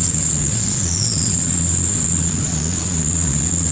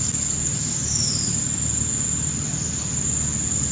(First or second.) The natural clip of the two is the second